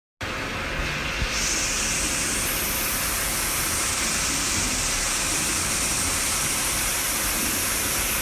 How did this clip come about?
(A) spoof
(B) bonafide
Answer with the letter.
B